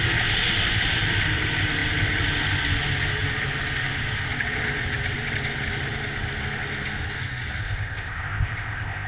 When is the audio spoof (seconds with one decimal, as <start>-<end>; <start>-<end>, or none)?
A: 7.6-9.1